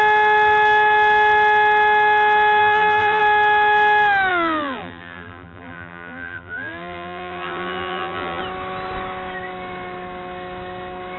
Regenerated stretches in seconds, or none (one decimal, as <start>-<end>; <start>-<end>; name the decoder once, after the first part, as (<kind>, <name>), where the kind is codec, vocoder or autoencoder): 2.6-3.2 (vocoder, BigVGAN v2); 4.3-8.4